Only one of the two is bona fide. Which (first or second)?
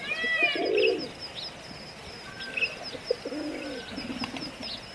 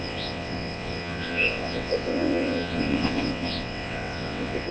first